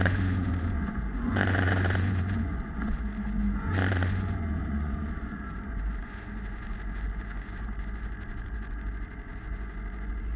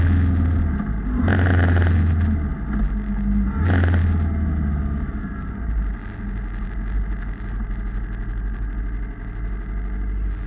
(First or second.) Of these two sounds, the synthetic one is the first